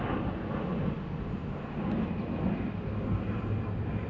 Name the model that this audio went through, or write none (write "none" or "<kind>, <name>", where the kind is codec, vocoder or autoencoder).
none